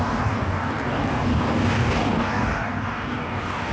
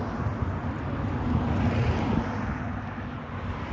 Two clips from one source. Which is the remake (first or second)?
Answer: first